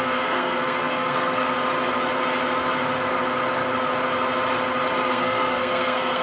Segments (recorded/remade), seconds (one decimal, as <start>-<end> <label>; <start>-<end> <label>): 0.0-1.4 remade; 1.4-5.1 recorded; 5.1-6.2 remade

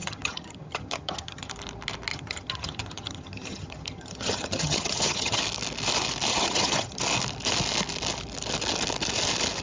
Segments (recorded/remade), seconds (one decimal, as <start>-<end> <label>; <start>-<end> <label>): 0.0-1.5 remade; 1.5-2.1 recorded; 2.1-5.4 remade; 5.4-6.3 recorded; 6.3-7.0 remade; 7.0-9.6 recorded

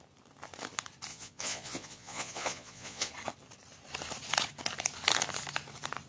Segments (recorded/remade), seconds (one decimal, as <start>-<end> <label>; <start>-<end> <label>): 0.0-1.1 recorded; 1.1-3.1 remade; 3.1-6.1 recorded

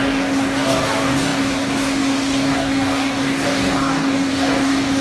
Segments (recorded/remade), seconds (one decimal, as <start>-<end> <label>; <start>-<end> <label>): 0.0-5.0 remade

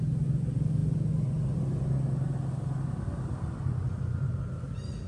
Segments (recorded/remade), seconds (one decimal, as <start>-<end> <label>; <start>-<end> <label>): 0.0-5.1 recorded

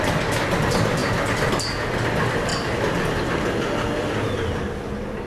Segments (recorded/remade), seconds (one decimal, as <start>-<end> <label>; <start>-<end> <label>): 0.0-2.5 recorded; 2.5-3.3 remade; 3.3-5.3 recorded

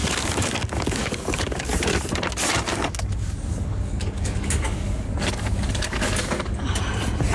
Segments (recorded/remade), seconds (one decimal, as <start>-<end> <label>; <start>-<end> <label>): 0.0-1.7 remade; 1.7-2.7 recorded; 2.7-6.8 remade; 6.8-7.3 recorded